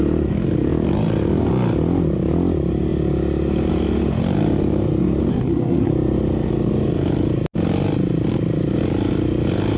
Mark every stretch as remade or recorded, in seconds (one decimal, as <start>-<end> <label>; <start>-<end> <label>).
0.0-5.3 recorded; 5.3-5.9 remade; 5.9-9.8 recorded